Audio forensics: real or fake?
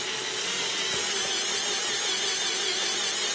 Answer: real